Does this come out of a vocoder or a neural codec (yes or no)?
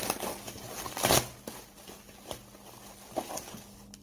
no